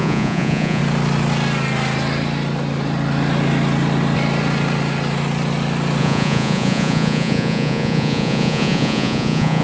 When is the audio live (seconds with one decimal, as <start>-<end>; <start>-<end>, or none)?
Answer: 0.8-6.0